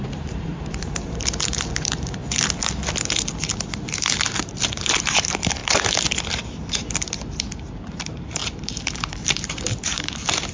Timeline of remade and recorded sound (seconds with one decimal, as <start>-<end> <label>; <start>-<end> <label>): 0.0-2.2 remade; 2.2-3.5 recorded; 3.5-5.6 remade; 5.6-6.3 recorded; 6.3-10.5 remade